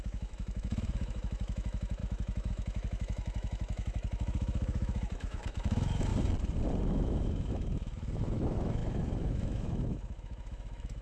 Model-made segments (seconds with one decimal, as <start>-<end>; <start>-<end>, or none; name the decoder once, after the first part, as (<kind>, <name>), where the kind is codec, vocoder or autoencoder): 0.0-6.1 (autoencoder, DAC-VAE); 6.8-11.0